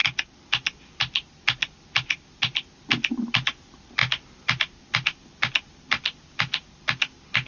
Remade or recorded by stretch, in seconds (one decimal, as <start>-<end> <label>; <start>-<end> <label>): 0.0-7.5 recorded